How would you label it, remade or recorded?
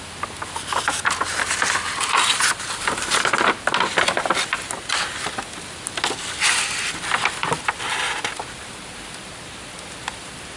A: recorded